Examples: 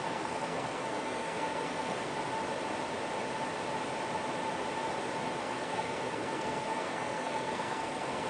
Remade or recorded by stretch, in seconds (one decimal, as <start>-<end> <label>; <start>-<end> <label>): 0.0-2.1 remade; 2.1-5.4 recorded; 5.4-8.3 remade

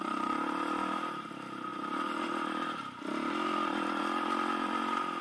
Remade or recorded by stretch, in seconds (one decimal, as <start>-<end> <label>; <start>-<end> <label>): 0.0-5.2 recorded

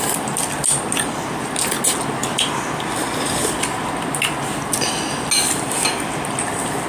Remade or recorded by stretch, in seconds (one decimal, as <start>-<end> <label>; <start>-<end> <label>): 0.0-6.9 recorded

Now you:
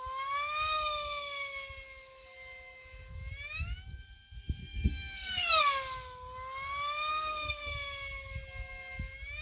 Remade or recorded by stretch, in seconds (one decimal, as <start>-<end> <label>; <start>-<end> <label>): 0.0-4.6 recorded; 4.6-5.6 remade; 5.6-7.1 recorded; 7.1-7.7 remade; 7.7-9.4 recorded